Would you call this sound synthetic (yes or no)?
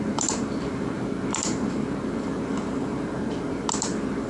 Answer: yes